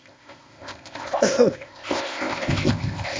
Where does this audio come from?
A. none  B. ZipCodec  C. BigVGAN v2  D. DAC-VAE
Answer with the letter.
B